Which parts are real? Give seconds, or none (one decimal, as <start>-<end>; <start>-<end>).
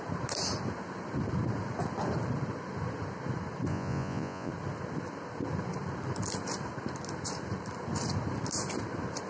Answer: 0.0-3.7; 4.5-9.3